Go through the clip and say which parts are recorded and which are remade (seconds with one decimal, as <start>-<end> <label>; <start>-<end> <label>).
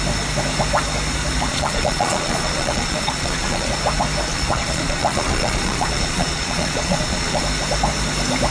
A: 0.0-1.5 recorded; 1.5-3.7 remade; 3.7-4.3 recorded; 4.3-7.4 remade; 7.4-8.5 recorded